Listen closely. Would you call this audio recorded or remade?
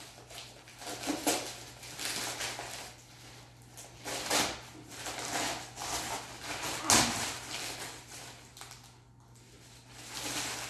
recorded